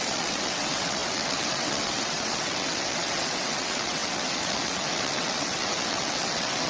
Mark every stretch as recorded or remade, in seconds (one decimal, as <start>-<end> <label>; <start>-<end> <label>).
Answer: 0.0-6.7 remade